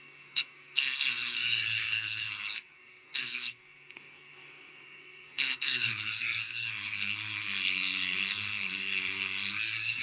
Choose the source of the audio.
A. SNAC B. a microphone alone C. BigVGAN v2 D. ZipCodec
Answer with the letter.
A